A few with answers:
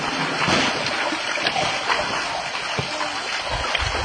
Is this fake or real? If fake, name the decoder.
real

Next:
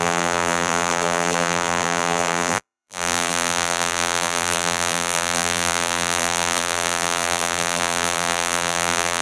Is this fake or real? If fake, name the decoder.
fake, vocoder, BigVGAN v2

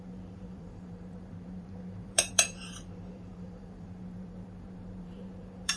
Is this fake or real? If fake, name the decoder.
fake, vocoder, BigVGAN v2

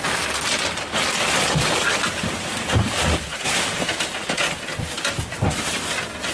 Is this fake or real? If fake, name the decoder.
fake, vocoder, BigVGAN v2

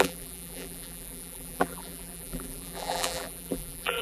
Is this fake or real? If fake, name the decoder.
fake, vocoder, BigVGAN v2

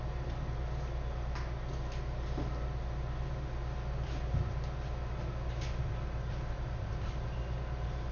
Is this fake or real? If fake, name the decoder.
real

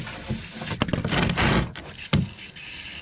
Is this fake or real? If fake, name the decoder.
real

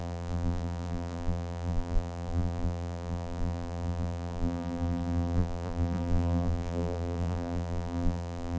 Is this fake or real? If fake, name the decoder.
fake, vocoder, BigVGAN v2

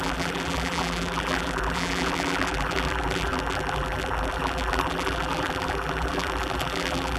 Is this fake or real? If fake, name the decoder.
fake, vocoder, BigVGAN v2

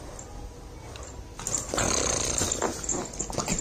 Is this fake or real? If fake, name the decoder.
real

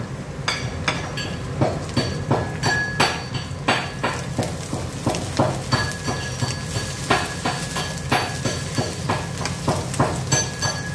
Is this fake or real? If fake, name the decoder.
real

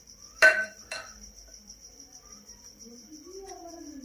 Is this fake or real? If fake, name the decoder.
fake, vocoder, BigVGAN v2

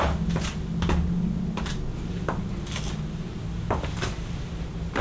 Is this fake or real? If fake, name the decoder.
real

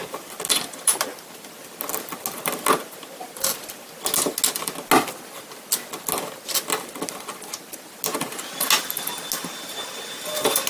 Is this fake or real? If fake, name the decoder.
real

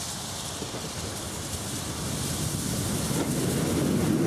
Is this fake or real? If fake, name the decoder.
real